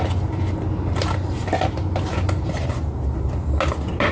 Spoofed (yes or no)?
no